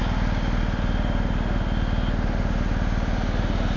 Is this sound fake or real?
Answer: real